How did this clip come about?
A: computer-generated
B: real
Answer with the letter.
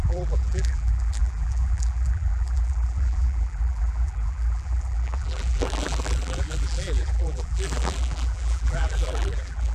A